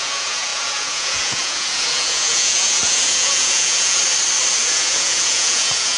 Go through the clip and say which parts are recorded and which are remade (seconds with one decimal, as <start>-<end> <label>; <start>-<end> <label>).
0.0-4.0 remade; 4.0-4.6 recorded; 4.6-6.0 remade